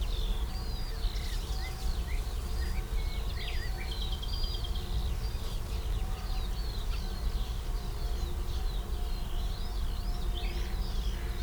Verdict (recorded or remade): recorded